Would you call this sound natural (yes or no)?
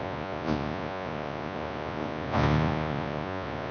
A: no